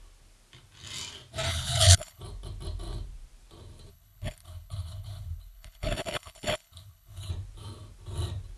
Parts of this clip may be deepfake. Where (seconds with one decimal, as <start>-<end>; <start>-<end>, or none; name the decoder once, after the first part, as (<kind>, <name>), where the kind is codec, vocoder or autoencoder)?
1.5-2.2 (codec, HILCodec); 3.9-7.3